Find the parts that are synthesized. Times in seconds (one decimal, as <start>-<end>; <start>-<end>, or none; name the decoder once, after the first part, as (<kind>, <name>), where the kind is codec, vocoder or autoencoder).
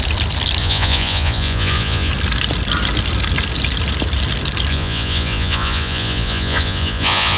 0.6-2.1 (vocoder, Vocos); 4.7-7.4